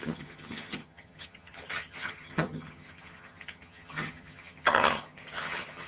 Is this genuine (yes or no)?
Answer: no